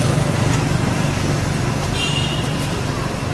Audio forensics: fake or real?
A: real